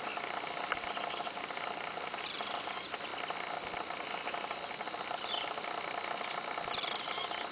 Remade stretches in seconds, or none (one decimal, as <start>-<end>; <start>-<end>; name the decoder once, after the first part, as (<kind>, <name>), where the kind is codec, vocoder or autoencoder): none